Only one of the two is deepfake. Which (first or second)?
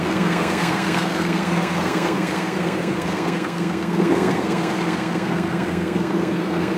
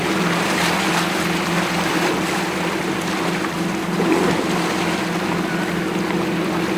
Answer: first